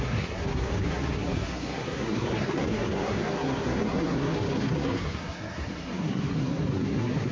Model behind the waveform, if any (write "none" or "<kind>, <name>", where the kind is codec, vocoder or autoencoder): codec, SNAC